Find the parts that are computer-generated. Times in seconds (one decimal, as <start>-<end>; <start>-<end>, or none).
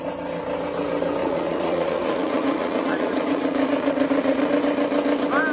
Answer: 1.2-4.5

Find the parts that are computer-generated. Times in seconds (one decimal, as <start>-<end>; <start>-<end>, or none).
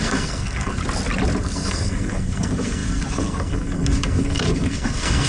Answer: 0.0-0.8; 1.4-5.3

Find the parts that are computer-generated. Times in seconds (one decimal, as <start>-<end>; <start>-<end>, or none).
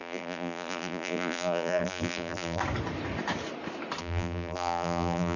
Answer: 0.0-2.6; 4.0-5.4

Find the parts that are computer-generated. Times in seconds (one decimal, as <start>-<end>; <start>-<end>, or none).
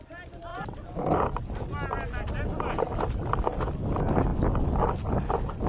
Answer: none